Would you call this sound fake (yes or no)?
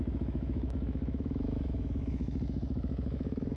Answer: yes